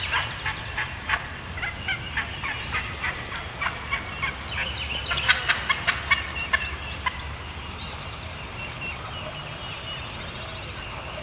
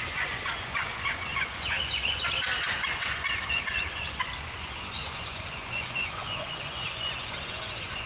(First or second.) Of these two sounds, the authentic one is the first